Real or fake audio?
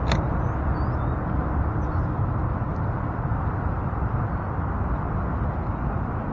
real